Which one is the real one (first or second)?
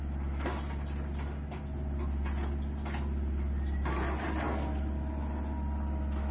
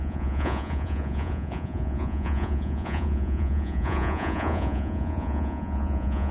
first